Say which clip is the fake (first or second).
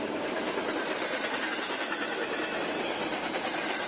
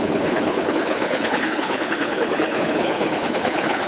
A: second